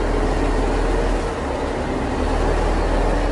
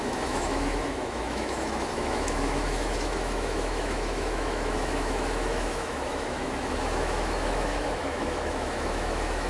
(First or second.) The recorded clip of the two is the first